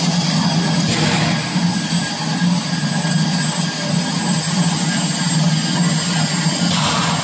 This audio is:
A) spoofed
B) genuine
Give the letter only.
B